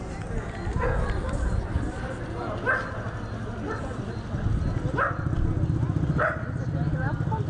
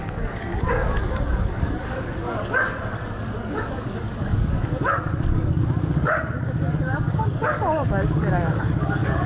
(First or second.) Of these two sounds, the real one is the first